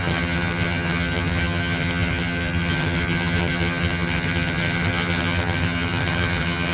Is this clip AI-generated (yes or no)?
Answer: yes